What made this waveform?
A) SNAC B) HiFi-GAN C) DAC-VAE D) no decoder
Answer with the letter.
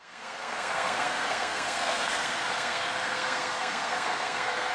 A